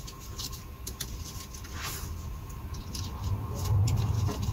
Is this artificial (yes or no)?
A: no